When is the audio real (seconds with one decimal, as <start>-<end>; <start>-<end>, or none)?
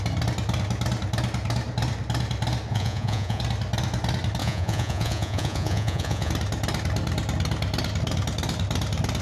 0.0-2.7; 3.4-4.4; 6.3-9.2